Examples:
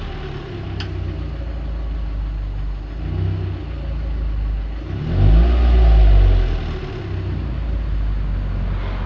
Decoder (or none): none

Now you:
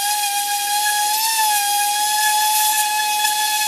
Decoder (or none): none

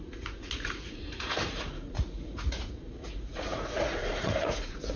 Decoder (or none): vocoder, Vocos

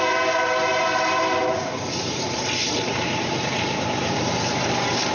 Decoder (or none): vocoder, BigVGAN v2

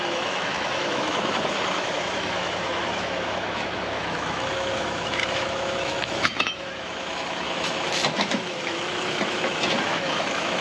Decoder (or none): autoencoder, DAC-VAE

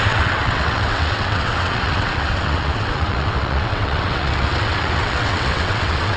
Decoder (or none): vocoder, WaveNeXt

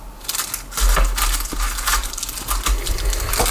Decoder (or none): none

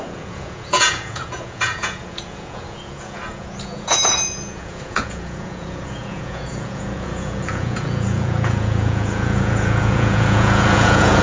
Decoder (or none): vocoder, Vocos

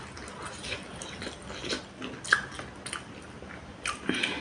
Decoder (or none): none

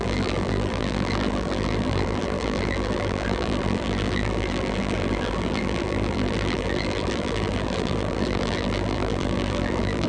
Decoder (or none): vocoder, BigVGAN v2